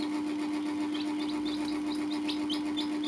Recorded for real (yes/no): yes